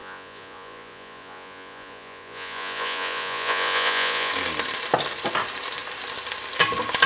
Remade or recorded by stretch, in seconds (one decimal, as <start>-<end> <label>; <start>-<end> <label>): 0.0-4.3 remade; 4.3-7.1 recorded